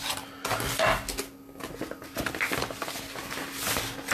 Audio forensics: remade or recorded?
recorded